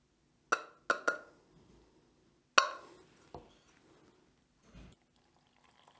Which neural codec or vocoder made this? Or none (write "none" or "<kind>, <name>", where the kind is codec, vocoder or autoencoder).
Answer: none